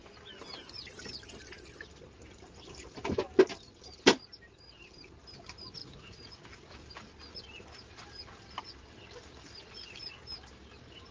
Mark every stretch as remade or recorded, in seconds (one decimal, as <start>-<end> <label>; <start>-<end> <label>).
0.0-5.8 recorded; 5.8-6.4 remade; 6.4-11.1 recorded